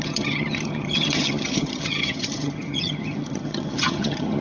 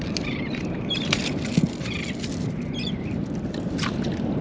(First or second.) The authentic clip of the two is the second